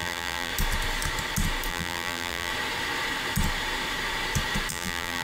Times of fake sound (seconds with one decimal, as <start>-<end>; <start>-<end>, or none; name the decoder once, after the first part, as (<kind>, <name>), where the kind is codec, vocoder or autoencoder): 0.0-0.5 (vocoder, BigVGAN v2); 1.7-2.5; 4.7-5.2